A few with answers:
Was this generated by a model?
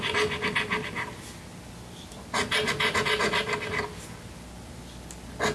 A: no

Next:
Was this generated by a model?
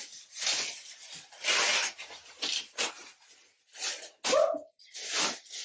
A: no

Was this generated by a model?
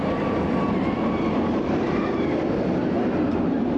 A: no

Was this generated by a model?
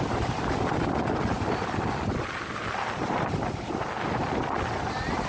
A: no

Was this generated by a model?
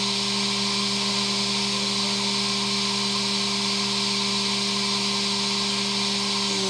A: no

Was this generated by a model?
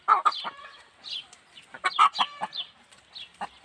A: no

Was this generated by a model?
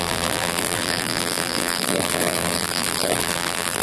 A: yes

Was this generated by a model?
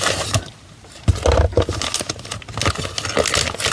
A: no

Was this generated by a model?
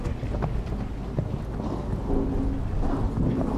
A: no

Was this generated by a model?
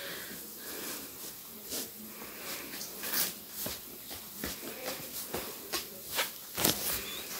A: yes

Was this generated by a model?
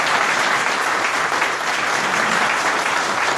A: yes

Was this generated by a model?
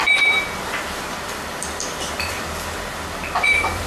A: yes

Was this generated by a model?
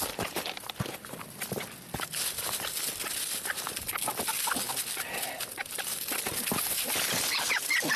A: no